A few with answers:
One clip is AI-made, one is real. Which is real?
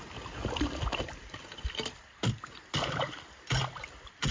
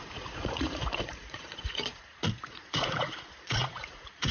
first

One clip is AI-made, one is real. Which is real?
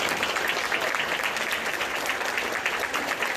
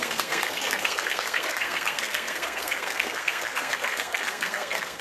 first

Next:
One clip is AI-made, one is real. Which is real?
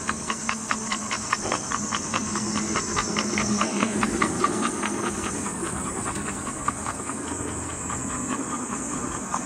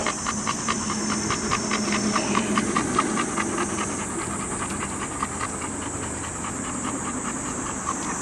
second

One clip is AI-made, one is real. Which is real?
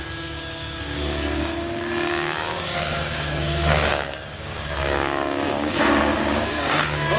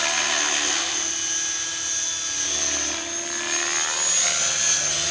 second